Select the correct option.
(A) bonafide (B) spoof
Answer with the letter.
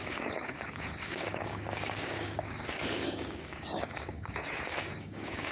B